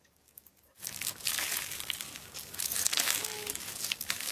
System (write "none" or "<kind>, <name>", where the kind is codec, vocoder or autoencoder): codec, DAC